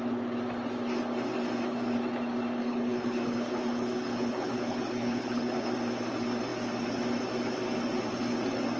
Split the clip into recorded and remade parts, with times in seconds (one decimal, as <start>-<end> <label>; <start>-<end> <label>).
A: 0.0-2.6 recorded; 2.6-5.7 remade; 5.7-8.8 recorded